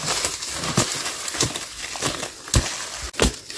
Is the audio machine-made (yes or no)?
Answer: no